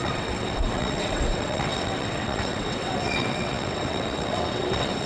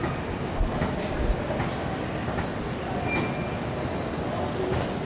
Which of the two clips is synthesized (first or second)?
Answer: first